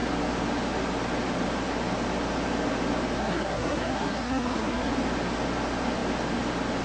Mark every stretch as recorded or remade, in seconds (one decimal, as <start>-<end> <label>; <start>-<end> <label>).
0.0-3.2 recorded; 3.2-4.9 remade; 4.9-6.8 recorded